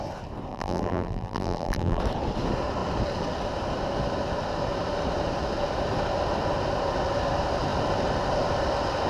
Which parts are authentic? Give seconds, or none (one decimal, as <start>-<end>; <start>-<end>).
0.0-0.5; 2.0-9.1